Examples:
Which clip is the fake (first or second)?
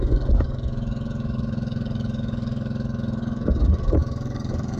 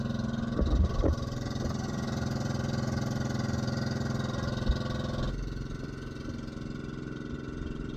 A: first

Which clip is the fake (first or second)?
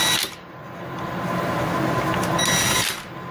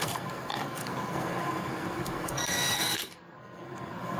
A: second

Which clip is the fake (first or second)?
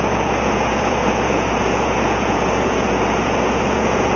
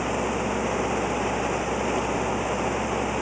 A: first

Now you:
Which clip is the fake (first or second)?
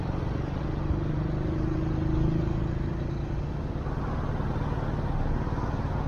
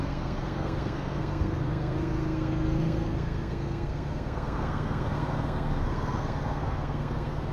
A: second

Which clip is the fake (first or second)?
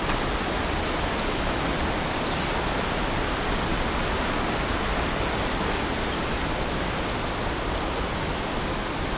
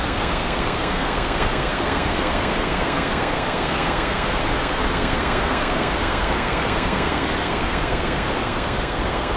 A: second